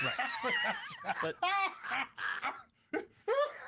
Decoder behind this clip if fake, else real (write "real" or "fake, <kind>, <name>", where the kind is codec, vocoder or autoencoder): real